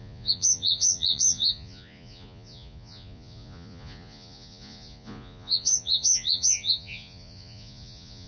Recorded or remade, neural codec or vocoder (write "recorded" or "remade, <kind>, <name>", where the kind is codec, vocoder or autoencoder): remade, vocoder, Vocos